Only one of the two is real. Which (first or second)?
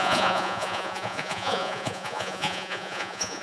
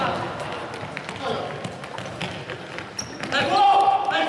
second